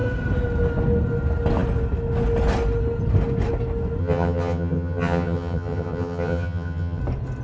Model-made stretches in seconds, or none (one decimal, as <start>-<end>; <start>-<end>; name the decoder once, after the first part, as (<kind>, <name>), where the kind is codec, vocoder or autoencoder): 4.0-7.0 (vocoder, HiFi-GAN)